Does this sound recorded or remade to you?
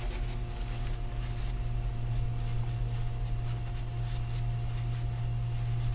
recorded